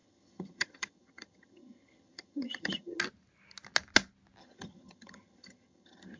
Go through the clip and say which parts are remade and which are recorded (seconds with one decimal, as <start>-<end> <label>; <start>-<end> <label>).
0.0-3.0 remade; 3.0-4.4 recorded; 4.4-6.2 remade